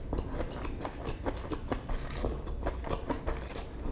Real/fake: real